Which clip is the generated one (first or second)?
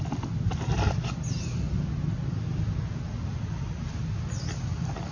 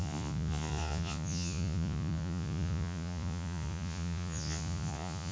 second